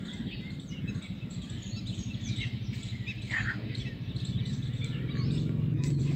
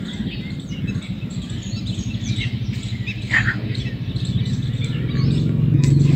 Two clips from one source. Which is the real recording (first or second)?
second